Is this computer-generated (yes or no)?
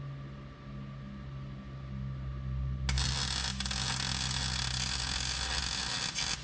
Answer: no